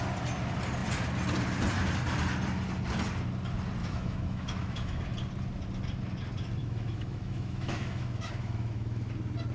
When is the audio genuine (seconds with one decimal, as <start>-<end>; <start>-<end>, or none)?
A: 0.0-3.8; 5.0-6.6; 9.1-9.5

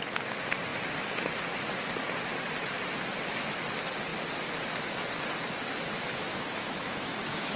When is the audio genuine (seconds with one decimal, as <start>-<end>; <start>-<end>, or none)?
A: 0.0-6.3

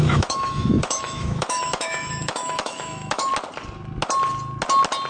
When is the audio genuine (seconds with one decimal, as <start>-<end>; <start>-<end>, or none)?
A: 3.3-5.1

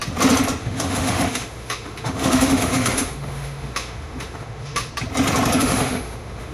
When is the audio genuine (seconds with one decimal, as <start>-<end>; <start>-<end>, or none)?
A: 0.0-0.6; 4.9-5.6